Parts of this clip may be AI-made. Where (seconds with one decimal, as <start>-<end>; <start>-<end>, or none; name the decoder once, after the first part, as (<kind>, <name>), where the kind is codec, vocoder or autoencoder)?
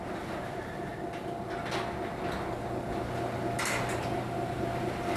0.0-0.9 (vocoder, BigVGAN v2); 4.0-5.2